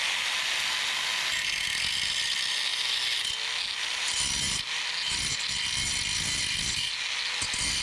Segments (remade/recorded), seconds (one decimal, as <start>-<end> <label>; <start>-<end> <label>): 0.0-7.8 recorded